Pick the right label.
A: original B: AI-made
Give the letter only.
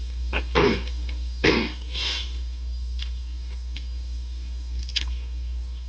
B